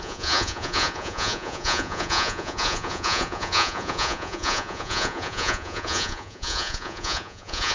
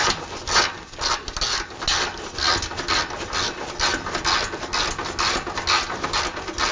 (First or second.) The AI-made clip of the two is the first